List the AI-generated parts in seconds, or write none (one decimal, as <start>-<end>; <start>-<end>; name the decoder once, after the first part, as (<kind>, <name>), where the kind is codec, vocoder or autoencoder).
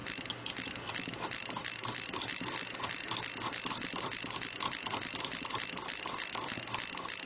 0.8-2.3 (vocoder, BigVGAN v2); 3.7-7.3